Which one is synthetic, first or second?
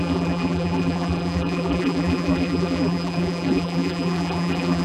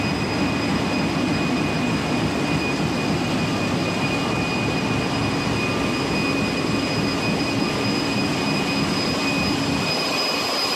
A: first